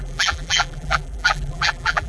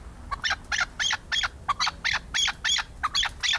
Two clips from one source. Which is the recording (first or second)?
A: second